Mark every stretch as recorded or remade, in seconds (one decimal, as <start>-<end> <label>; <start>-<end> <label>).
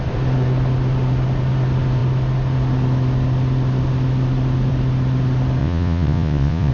0.0-5.6 recorded; 5.6-6.7 remade